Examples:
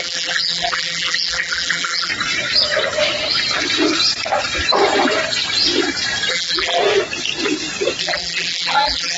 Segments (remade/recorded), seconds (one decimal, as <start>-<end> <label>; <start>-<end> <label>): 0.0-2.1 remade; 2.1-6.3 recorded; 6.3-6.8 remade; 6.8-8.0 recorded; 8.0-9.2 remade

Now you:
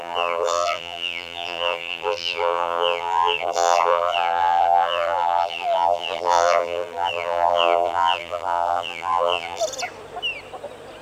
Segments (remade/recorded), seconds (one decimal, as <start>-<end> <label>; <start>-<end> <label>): 0.0-9.6 remade; 9.6-11.0 recorded

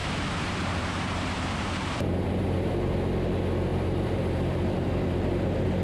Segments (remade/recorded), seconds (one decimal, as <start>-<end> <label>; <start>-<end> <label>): 0.0-2.9 remade; 2.9-3.7 recorded; 3.7-5.8 remade

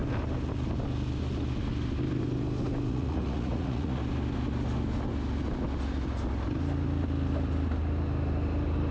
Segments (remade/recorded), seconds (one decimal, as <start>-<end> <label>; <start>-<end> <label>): 0.0-2.9 recorded; 2.9-4.0 remade; 4.0-8.9 recorded

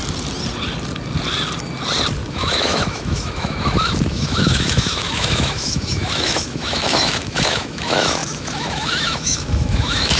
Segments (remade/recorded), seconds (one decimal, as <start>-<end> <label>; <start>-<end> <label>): 0.0-2.3 recorded; 2.3-10.2 remade